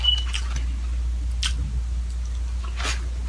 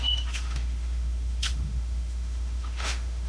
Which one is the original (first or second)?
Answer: first